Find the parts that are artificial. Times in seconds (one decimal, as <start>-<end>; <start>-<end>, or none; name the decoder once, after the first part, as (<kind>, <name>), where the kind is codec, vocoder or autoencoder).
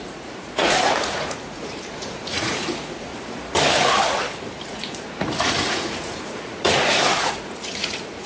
0.0-3.1 (vocoder, Vocos); 4.7-8.3